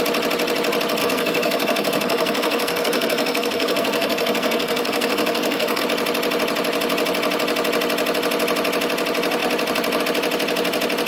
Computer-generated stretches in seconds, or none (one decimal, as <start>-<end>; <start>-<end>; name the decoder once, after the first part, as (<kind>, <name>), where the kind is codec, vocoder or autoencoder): 1.0-5.8 (codec, SNAC)